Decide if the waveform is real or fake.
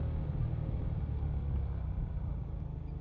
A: real